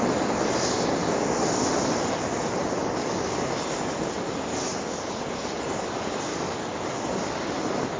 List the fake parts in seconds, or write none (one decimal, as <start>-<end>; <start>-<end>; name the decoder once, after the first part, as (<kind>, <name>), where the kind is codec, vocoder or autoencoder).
6.3-6.8 (codec, DAC)